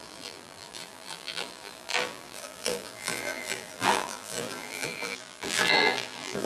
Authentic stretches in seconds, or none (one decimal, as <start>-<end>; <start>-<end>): none